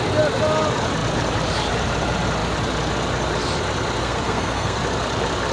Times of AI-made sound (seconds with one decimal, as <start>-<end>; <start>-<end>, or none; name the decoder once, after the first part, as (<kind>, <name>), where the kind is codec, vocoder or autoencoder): 4.0-4.8 (codec, SNAC)